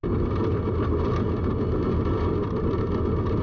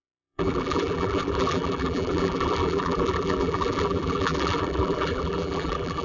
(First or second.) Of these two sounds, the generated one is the second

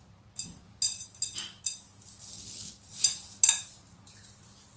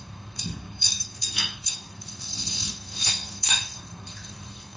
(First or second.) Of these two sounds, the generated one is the second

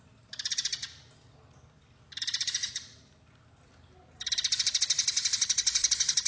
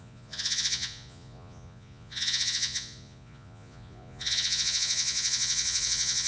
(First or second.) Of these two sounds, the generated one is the second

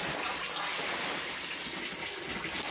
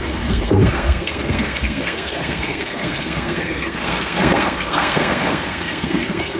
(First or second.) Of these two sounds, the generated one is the second